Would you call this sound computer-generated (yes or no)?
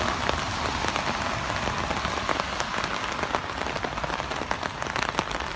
no